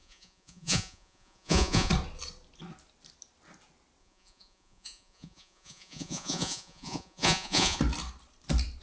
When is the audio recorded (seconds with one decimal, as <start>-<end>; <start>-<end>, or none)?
1.9-4.0; 7.8-8.8

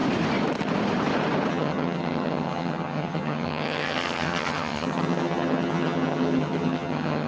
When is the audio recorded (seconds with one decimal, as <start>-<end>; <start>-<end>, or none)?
0.0-1.5

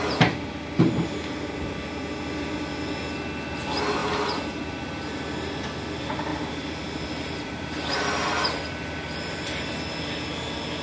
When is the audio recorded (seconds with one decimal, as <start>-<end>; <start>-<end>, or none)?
0.0-4.0; 5.2-6.3; 9.8-10.8

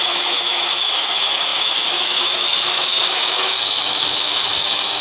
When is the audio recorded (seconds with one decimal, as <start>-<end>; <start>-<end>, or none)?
none

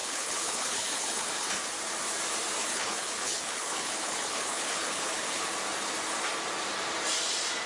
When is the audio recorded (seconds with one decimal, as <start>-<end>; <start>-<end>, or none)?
1.6-2.6; 5.5-7.7

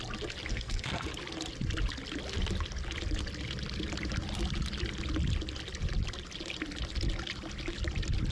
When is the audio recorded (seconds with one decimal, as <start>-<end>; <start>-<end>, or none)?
0.0-0.5; 1.1-8.3